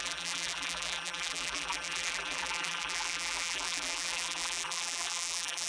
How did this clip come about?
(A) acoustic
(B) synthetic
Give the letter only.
B